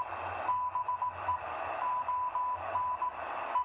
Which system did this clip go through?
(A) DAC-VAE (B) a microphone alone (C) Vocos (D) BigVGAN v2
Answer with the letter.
B